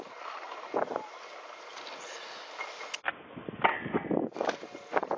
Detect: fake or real real